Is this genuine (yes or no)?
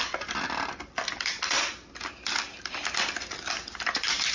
yes